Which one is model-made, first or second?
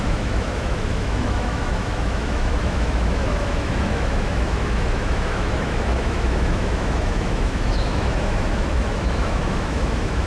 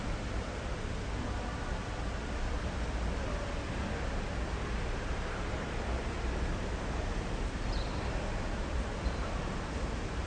first